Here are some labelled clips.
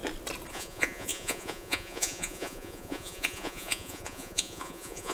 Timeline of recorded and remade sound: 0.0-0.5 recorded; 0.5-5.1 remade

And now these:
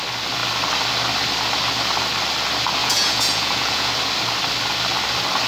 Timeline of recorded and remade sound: 0.0-2.8 recorded; 2.8-3.9 remade; 3.9-5.5 recorded

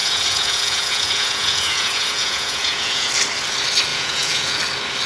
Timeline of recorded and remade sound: 0.0-3.1 remade; 3.1-3.9 recorded; 3.9-4.6 remade; 4.6-5.1 recorded

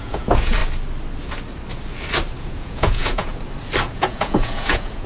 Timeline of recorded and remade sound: 0.0-0.6 remade; 0.6-2.4 recorded; 2.4-3.3 remade; 3.3-3.9 recorded; 3.9-5.1 remade

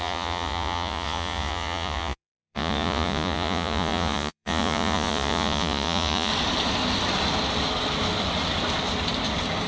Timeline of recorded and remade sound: 0.0-6.3 remade; 6.3-9.7 recorded